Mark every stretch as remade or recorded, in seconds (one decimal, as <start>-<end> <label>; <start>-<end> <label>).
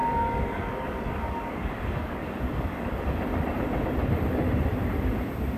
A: 0.0-3.0 remade; 3.0-5.6 recorded